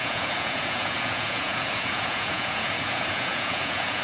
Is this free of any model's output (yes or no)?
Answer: no